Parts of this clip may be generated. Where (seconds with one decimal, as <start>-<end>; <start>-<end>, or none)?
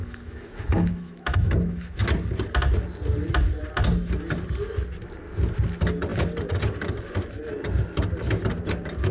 0.0-2.0